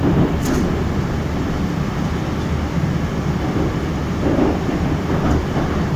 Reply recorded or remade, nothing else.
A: recorded